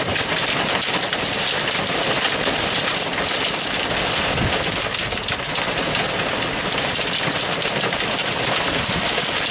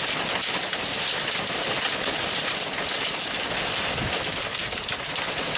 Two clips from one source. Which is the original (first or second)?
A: first